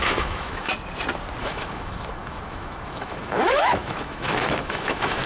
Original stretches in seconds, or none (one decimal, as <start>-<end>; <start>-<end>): 0.7-1.4